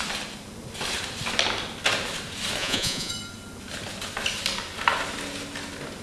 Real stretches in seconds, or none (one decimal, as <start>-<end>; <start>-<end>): 0.0-2.6; 3.1-6.0